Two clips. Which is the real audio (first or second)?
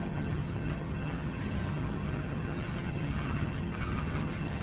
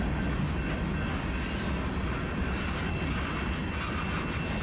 second